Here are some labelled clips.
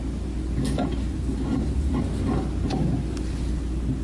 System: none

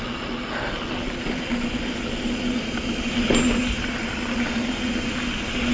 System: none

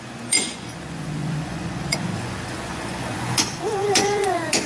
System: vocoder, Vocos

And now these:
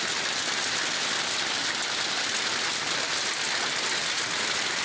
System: none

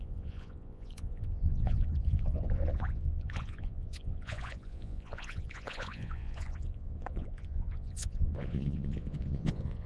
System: vocoder, Vocos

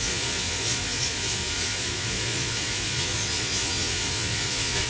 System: vocoder, Vocos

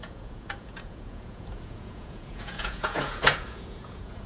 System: vocoder, Vocos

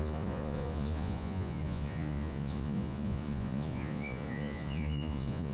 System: vocoder, Vocos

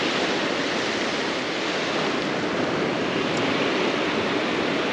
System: none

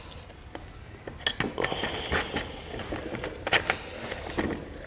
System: none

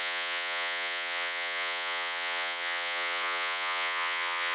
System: vocoder, Vocos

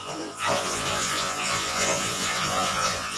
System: vocoder, Vocos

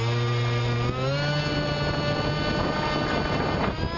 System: none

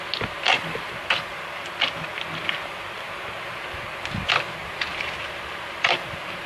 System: none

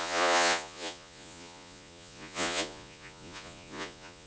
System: vocoder, Vocos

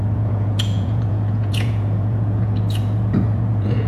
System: vocoder, Vocos